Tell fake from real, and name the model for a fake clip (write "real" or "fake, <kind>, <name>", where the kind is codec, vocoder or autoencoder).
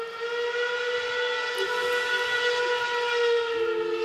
real